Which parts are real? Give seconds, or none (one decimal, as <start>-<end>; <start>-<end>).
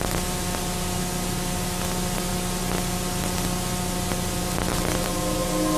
0.0-5.8